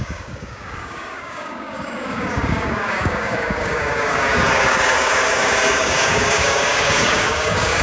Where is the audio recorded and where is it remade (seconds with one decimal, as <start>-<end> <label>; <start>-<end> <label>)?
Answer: 0.0-7.8 remade

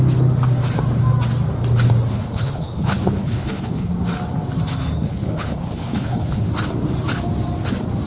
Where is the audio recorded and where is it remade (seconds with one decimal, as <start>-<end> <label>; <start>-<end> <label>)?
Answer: 0.0-2.1 recorded; 2.1-3.9 remade; 3.9-5.1 recorded; 5.1-6.4 remade; 6.4-8.1 recorded

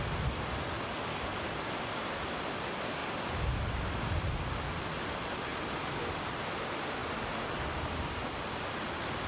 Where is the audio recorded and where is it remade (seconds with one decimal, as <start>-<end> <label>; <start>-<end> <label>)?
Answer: 0.0-1.3 recorded; 1.3-2.6 remade; 2.6-7.0 recorded; 7.0-8.4 remade; 8.4-9.3 recorded

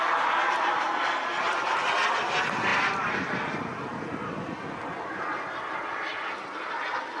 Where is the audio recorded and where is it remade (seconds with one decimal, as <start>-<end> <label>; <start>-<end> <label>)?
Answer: 0.0-7.2 recorded

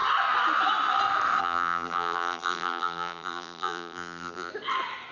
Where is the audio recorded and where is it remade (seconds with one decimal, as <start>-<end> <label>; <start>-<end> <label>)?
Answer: 0.0-1.4 recorded; 1.4-4.5 remade; 4.5-5.1 recorded

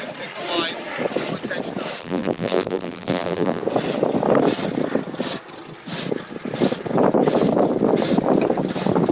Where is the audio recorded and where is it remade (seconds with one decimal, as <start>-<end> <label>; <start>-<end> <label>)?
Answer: 0.0-2.0 recorded; 2.0-3.6 remade; 3.6-9.1 recorded

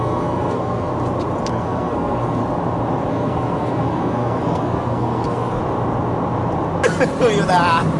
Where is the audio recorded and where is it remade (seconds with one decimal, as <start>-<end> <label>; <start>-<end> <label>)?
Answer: 0.0-0.9 remade; 0.9-1.5 recorded; 1.5-2.4 remade; 2.4-3.1 recorded; 3.1-5.6 remade; 5.6-8.0 recorded